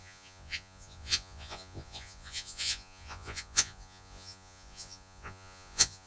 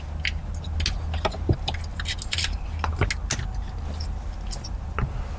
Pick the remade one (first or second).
first